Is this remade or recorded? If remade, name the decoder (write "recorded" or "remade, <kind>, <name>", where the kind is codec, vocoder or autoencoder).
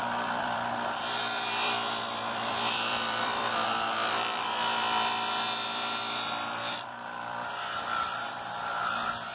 remade, vocoder, BigVGAN v2